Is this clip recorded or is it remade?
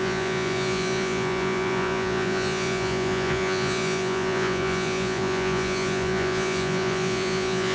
remade